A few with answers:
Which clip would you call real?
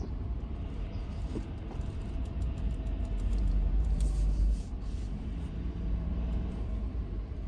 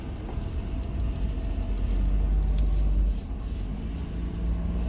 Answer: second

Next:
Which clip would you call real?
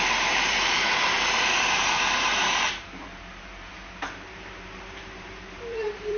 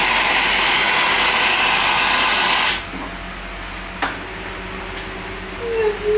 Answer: second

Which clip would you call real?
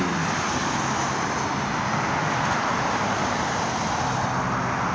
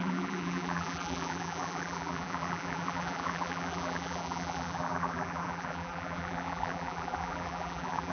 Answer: first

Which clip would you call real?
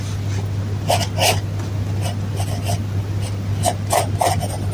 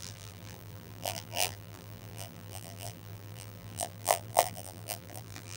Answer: first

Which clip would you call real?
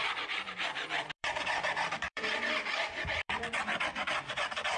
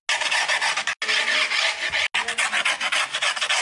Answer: second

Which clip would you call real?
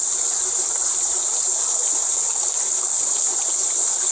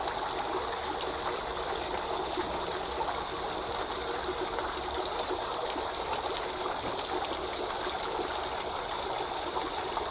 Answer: second